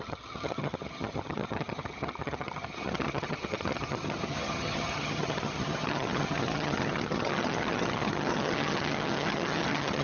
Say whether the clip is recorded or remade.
remade